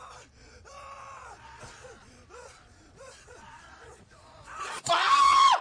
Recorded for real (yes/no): no